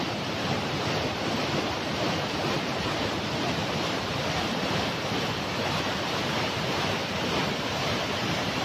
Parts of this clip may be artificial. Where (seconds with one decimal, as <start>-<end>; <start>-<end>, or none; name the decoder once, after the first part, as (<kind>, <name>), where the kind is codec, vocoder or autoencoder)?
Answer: 0.0-7.0 (vocoder, BigVGAN v2); 7.5-8.6